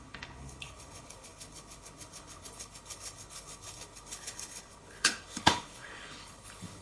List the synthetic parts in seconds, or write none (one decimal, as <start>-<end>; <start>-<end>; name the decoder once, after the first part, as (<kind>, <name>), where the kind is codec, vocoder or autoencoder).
0.0-6.8 (codec, HILCodec)